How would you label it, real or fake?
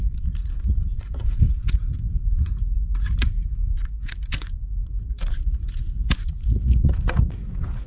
fake